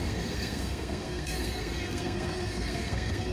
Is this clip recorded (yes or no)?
no